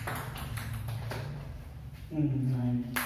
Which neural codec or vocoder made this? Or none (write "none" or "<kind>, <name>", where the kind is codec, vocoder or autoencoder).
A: vocoder, BigVGAN v2